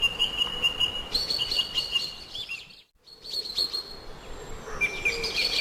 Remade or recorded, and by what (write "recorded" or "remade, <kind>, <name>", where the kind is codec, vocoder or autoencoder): recorded